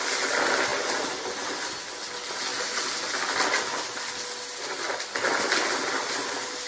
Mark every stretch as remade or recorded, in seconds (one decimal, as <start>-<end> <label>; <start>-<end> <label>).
0.0-6.7 recorded